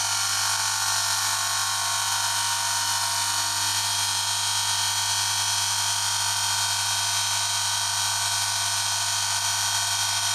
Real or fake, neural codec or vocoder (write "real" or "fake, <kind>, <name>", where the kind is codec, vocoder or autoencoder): real